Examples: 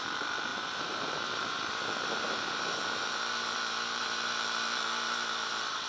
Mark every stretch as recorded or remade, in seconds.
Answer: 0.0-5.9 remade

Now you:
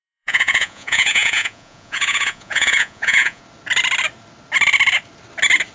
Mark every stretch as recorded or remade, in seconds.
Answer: 0.0-3.4 remade; 3.4-5.7 recorded

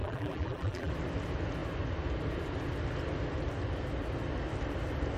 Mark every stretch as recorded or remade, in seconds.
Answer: 0.0-0.9 remade; 0.9-5.2 recorded